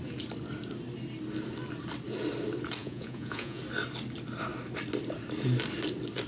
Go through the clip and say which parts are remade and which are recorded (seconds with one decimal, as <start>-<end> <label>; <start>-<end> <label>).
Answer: 0.0-2.8 recorded; 2.8-3.6 remade; 3.6-6.3 recorded